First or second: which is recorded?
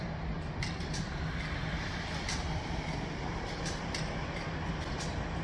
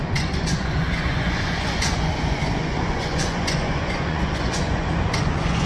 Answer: first